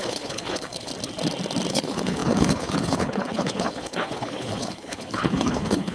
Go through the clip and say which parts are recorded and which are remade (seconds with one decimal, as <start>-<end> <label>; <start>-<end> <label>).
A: 0.0-0.9 remade; 0.9-1.7 recorded; 1.7-5.9 remade